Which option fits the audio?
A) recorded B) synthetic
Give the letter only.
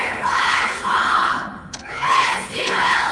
B